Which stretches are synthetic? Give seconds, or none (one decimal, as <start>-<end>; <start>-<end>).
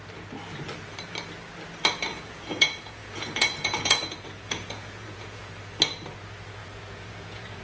2.1-5.5; 6.6-7.6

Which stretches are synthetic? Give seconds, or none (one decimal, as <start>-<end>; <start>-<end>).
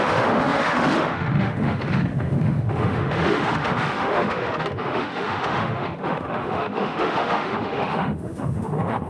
0.0-9.1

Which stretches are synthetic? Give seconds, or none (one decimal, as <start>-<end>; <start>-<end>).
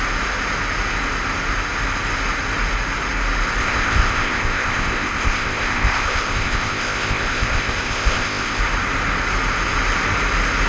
3.6-8.6